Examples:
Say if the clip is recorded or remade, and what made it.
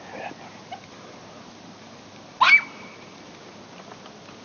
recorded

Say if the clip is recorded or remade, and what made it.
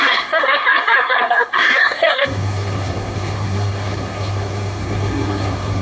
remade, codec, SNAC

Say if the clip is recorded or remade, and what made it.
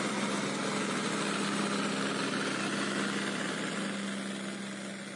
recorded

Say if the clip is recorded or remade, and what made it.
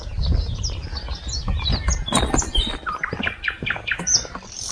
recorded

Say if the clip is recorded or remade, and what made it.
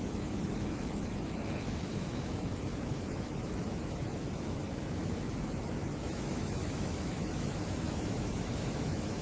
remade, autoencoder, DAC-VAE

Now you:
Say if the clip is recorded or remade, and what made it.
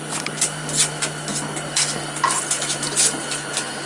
recorded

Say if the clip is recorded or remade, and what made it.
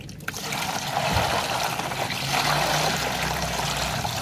recorded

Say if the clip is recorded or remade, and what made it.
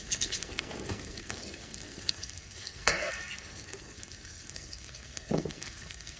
remade, codec, SNAC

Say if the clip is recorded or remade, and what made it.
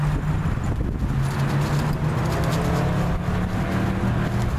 recorded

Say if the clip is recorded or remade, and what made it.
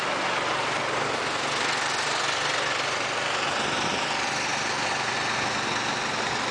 recorded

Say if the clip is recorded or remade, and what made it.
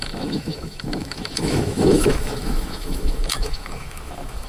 remade, autoencoder, DAC-VAE